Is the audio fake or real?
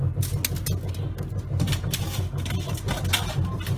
real